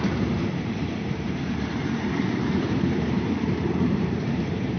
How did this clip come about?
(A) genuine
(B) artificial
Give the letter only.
B